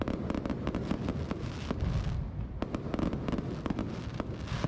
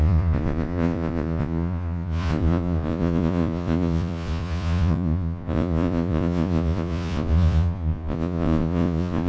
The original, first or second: first